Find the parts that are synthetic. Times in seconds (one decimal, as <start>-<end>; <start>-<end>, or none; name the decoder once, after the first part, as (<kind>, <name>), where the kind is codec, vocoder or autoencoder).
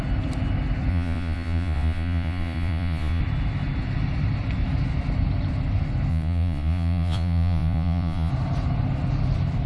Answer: 0.9-3.2 (vocoder, Vocos); 6.1-8.3